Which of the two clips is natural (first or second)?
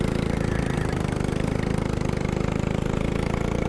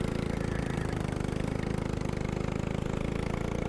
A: second